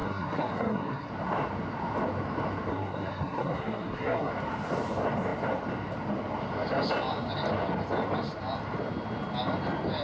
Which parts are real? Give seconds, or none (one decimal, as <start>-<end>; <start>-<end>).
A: 1.1-2.7; 4.3-10.0